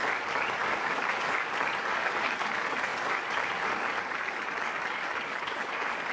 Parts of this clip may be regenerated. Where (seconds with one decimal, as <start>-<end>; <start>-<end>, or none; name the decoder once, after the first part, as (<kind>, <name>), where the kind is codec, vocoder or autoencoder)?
0.0-6.1 (codec, DAC)